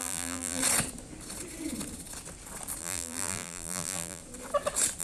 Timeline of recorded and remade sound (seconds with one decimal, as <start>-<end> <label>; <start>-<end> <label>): 0.0-0.6 remade; 0.6-2.8 recorded; 2.8-4.2 remade; 4.2-5.0 recorded